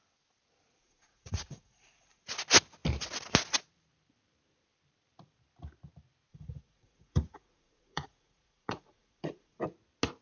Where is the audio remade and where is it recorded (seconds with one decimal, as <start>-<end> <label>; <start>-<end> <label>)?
0.0-0.8 recorded; 0.8-2.2 remade; 2.2-6.3 recorded; 6.3-9.6 remade; 9.6-10.2 recorded